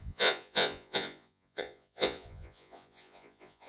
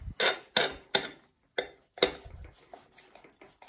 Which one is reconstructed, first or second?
first